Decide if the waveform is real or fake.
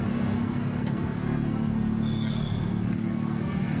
fake